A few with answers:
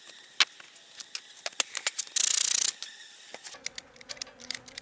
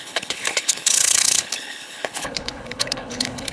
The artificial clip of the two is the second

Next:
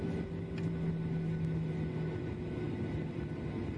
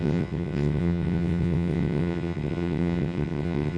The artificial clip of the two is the second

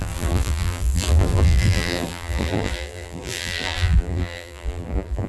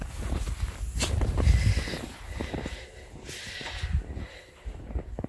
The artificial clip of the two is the first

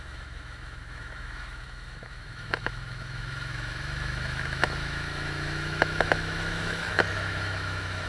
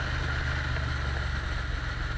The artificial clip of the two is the first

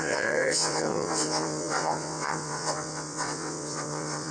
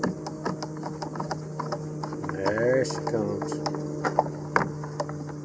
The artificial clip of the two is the first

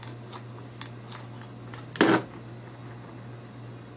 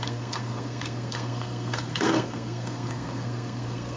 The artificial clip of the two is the second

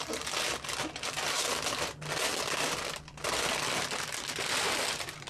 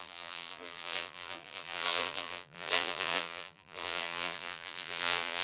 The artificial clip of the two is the second